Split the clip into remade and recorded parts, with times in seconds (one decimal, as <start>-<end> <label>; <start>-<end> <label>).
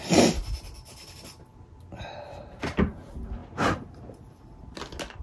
0.0-5.2 recorded